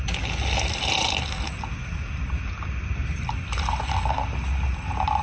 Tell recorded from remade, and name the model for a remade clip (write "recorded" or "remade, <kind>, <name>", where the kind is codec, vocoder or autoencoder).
recorded